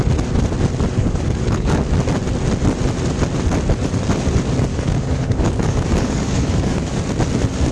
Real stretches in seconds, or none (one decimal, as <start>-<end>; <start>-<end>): 0.0-1.0; 1.8-4.7; 7.0-7.7